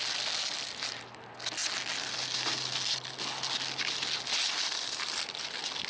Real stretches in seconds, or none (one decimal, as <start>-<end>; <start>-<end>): 0.0-5.9